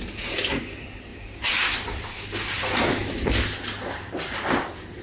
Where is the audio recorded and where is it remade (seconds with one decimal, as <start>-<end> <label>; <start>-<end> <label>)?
0.0-5.0 recorded